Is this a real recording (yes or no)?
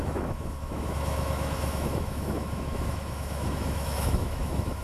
no